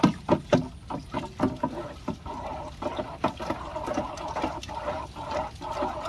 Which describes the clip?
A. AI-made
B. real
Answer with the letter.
B